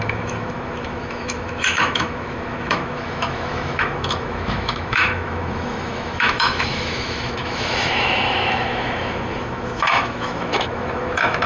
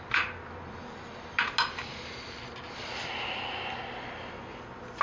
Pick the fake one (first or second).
first